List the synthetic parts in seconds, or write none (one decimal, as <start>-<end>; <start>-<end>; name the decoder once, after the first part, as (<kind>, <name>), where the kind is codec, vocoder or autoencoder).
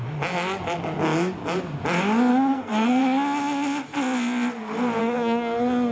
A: 2.3-3.0 (codec, SNAC); 5.0-5.9